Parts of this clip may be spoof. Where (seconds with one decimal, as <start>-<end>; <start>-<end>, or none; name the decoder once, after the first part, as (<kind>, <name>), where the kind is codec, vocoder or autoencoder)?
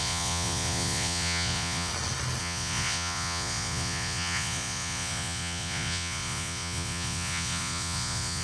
0.0-1.9 (vocoder, Vocos); 2.4-8.4